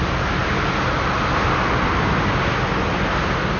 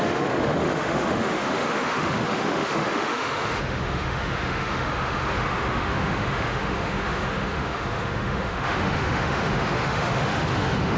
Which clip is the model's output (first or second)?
second